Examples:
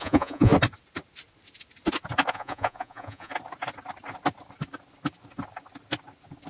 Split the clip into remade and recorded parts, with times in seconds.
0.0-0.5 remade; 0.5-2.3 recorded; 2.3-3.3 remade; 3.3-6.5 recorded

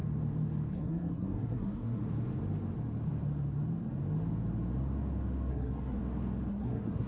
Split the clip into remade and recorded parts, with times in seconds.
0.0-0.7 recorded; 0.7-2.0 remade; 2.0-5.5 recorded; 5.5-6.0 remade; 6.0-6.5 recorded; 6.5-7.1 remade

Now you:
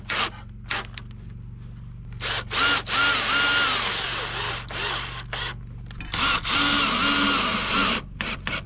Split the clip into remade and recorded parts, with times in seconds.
0.0-8.7 recorded

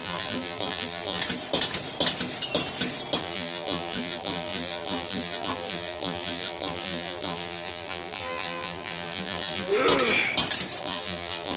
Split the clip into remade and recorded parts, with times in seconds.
0.0-1.2 remade; 1.2-3.2 recorded; 3.2-9.7 remade; 9.7-10.8 recorded; 10.8-11.6 remade

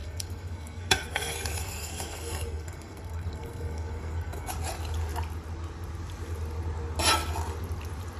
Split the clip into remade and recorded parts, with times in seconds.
0.0-4.5 remade; 4.5-8.2 recorded